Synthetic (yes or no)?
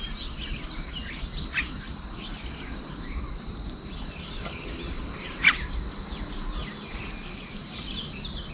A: no